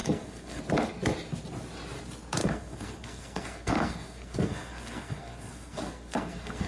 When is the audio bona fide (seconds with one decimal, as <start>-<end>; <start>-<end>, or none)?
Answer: 0.6-2.4